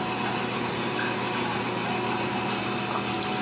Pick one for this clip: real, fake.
real